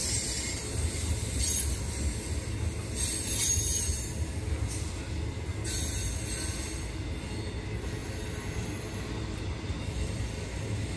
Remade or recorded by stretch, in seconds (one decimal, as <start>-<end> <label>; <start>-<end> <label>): 0.0-2.2 remade; 2.2-8.0 recorded; 8.0-10.6 remade; 10.6-11.0 recorded